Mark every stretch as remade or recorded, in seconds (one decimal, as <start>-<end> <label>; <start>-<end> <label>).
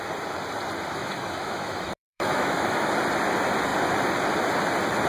0.0-1.0 recorded; 1.0-2.9 remade; 2.9-5.1 recorded